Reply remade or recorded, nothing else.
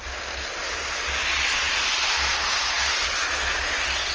recorded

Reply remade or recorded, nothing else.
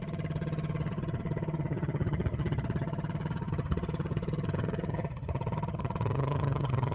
remade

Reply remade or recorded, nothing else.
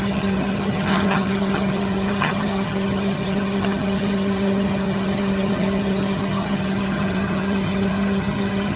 remade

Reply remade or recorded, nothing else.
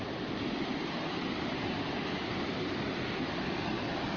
recorded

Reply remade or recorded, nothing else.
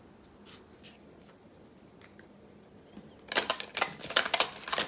recorded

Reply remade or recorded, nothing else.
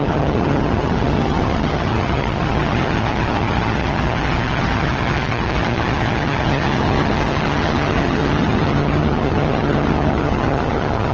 remade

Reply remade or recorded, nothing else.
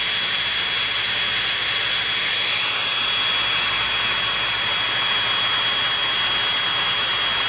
recorded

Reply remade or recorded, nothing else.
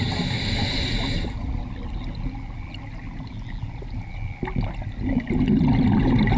recorded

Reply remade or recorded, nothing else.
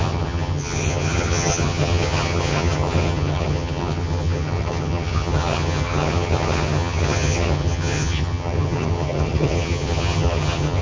remade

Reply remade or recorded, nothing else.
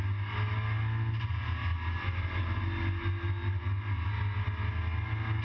recorded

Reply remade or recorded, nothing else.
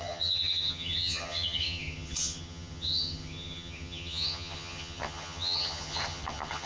remade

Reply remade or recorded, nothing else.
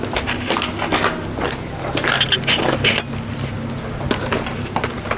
recorded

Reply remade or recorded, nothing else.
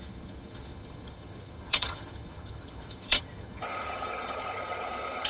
remade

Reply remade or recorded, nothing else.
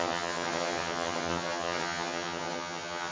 remade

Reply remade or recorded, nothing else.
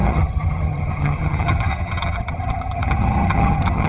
remade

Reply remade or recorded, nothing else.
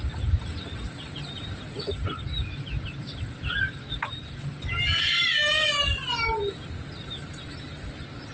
recorded